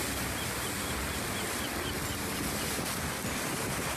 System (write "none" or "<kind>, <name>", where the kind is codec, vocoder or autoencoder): none